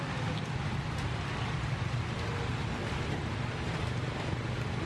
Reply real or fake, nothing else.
real